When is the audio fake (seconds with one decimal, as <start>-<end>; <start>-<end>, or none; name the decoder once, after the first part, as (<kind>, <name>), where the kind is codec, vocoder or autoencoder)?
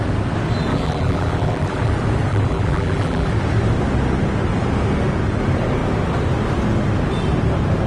0.7-1.9 (vocoder, BigVGAN v2); 2.3-3.3